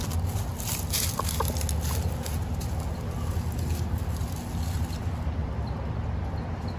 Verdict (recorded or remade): recorded